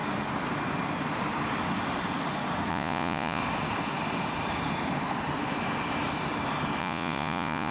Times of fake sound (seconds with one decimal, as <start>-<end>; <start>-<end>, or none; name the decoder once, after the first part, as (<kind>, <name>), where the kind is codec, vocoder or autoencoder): 2.7-3.4 (vocoder, Vocos); 6.8-7.7